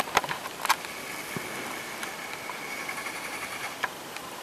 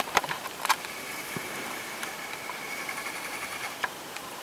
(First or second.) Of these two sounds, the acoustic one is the first